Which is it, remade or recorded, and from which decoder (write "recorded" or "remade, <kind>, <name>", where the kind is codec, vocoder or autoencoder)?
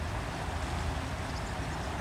recorded